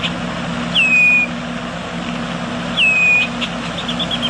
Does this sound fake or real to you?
real